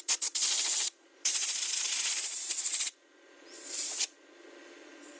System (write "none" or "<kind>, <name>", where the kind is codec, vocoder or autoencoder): vocoder, Vocos